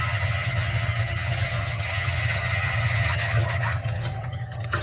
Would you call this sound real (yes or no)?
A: no